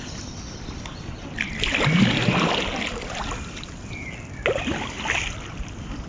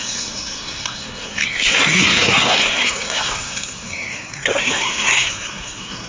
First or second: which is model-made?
second